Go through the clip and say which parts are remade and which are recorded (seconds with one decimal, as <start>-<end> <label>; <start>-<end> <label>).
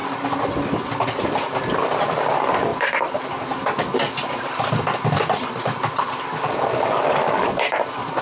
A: 0.0-2.7 recorded; 2.7-3.3 remade; 3.3-3.9 recorded; 3.9-8.2 remade